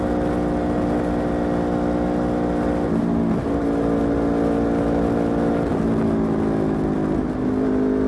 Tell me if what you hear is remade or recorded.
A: recorded